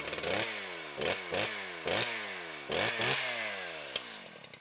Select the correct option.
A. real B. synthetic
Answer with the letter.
A